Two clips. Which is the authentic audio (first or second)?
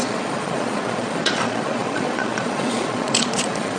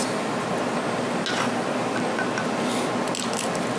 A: second